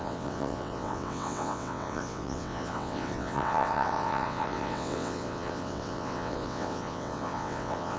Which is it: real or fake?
fake